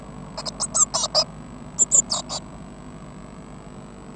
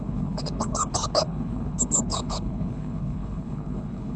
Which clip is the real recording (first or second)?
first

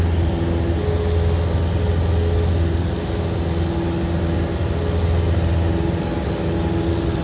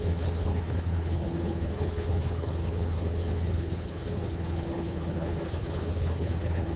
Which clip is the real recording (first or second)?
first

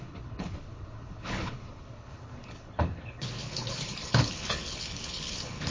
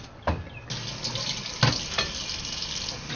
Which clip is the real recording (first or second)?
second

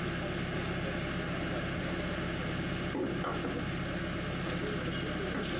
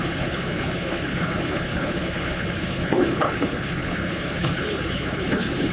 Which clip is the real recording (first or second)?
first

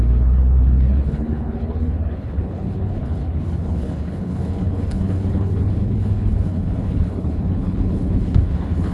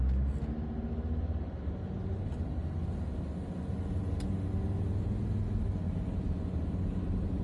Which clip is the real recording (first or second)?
second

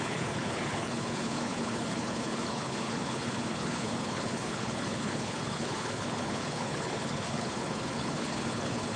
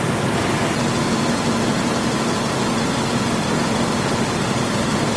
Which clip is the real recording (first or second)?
second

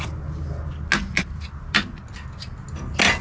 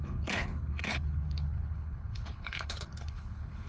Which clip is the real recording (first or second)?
first